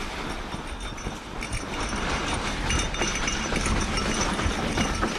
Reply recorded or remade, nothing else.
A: recorded